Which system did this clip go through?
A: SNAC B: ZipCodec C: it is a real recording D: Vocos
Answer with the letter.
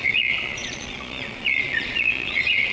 D